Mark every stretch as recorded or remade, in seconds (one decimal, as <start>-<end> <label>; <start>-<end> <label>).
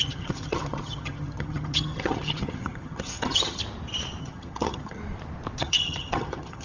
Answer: 0.0-3.6 remade; 3.6-4.2 recorded; 4.2-5.0 remade; 5.0-5.6 recorded; 5.6-6.6 remade